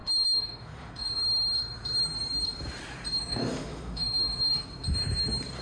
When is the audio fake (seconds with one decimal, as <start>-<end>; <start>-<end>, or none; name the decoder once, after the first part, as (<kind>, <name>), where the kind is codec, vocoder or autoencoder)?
0.0-1.2 (autoencoder, DAC-VAE); 3.2-4.5